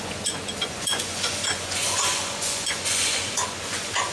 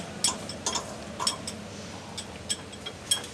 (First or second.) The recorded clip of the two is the second